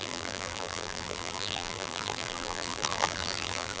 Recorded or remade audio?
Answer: remade